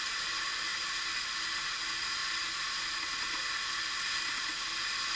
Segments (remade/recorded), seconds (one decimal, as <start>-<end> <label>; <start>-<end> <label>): 0.0-5.2 recorded